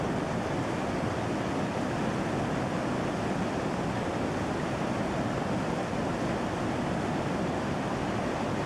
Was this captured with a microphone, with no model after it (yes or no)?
yes